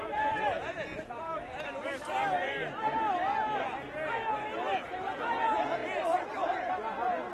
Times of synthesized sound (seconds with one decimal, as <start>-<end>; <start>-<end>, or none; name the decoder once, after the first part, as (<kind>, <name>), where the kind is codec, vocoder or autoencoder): 0.0-1.3 (vocoder, Vocos); 5.2-5.8